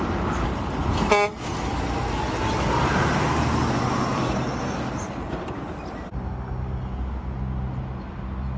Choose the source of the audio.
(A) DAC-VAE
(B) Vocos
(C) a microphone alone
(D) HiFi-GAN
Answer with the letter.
C